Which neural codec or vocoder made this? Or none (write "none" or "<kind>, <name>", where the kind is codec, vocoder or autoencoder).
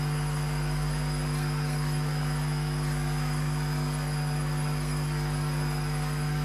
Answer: codec, SNAC